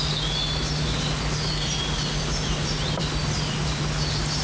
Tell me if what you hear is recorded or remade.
recorded